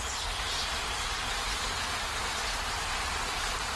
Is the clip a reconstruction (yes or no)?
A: yes